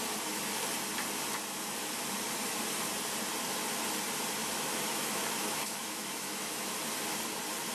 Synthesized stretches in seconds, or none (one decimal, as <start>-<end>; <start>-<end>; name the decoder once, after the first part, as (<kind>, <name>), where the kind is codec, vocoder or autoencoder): 4.4-6.7 (autoencoder, DAC-VAE)